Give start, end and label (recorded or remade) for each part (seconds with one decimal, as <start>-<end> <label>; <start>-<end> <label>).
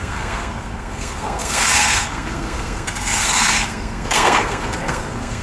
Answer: 0.0-5.4 remade